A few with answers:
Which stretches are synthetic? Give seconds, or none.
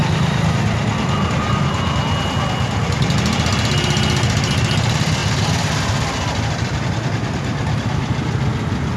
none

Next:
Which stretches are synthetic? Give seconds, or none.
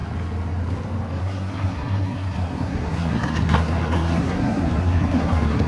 1.2-5.7 (codec, SNAC)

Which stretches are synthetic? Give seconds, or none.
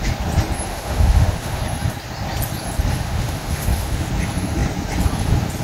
0.7-1.6 (autoencoder, DAC-VAE); 2.9-4.1